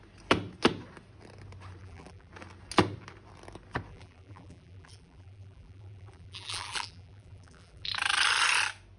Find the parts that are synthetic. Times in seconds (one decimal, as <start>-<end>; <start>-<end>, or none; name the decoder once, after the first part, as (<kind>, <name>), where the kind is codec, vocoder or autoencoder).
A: 1.8-2.3 (vocoder, BigVGAN v2); 3.9-7.9